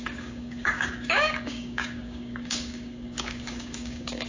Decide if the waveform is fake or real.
fake